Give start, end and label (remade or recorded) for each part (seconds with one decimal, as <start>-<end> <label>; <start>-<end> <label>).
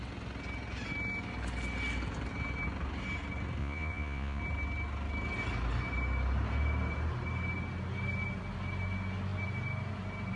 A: 0.0-3.6 recorded; 3.6-4.4 remade; 4.4-10.4 recorded